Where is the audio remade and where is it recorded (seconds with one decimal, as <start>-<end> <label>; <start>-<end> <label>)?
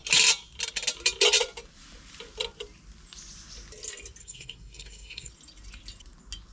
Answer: 0.0-4.2 recorded; 4.2-5.3 remade; 5.3-6.5 recorded